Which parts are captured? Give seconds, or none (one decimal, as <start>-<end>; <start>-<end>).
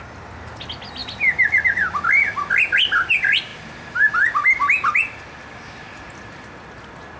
0.0-1.0; 2.0-3.5